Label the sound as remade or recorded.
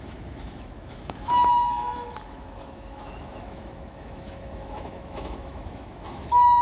remade